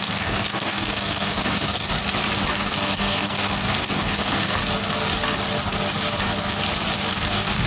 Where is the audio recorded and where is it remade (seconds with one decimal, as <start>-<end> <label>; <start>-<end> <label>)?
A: 0.0-1.9 remade; 1.9-2.5 recorded; 2.5-4.6 remade; 4.6-7.1 recorded; 7.1-7.7 remade